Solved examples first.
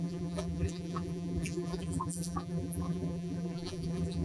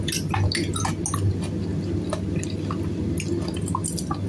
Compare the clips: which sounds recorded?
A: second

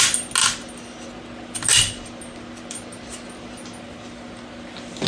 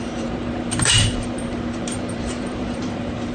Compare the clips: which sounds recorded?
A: first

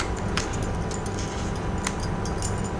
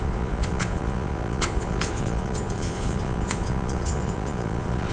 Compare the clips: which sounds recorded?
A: first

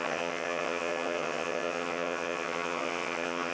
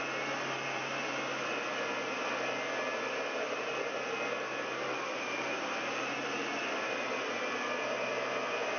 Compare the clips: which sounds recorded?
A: second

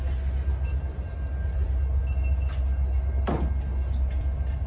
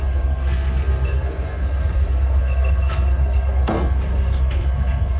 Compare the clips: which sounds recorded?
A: first